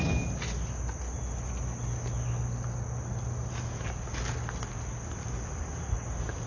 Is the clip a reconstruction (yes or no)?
no